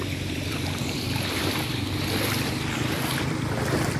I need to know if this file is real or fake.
fake